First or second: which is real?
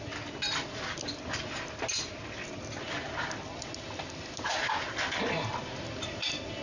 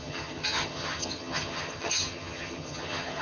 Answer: first